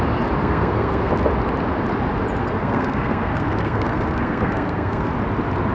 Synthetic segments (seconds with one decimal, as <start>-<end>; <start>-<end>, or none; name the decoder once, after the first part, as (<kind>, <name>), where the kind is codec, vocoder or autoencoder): 0.4-1.1 (codec, SNAC); 2.4-5.1